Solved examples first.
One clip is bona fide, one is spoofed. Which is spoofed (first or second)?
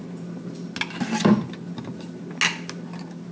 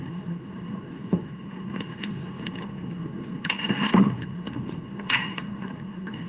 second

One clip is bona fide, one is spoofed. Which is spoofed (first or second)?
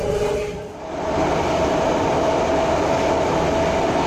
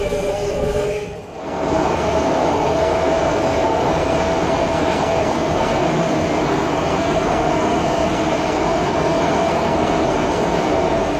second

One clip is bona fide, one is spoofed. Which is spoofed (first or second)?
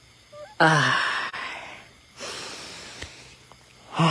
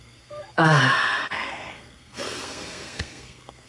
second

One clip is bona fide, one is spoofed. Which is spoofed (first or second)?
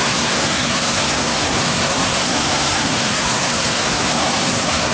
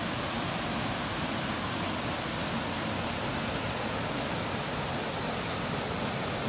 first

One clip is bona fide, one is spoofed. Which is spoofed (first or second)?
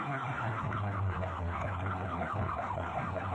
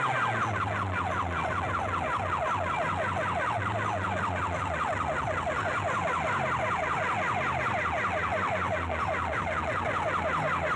first